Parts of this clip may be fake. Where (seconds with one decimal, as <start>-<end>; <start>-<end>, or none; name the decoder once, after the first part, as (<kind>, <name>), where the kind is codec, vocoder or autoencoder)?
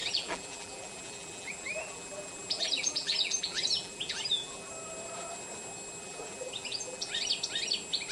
0.0-4.7 (vocoder, BigVGAN v2); 6.0-7.1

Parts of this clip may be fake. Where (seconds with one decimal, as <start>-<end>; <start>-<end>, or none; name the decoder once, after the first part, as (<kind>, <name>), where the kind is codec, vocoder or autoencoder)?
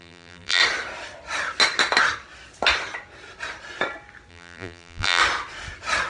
0.0-0.6 (vocoder, BigVGAN v2); 4.3-5.2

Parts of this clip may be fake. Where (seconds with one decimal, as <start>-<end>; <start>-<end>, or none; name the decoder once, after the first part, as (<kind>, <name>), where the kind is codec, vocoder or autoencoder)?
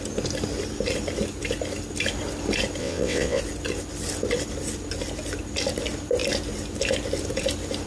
2.8-3.4 (vocoder, WaveNeXt)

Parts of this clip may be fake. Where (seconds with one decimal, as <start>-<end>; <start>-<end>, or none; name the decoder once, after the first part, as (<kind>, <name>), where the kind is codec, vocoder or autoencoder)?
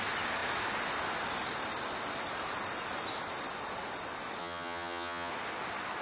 4.4-5.3 (vocoder, HiFi-GAN)